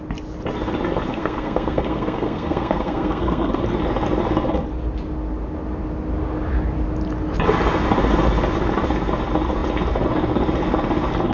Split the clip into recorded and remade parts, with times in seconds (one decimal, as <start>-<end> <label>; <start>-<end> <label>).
0.0-1.1 recorded; 1.1-3.6 remade; 3.6-11.3 recorded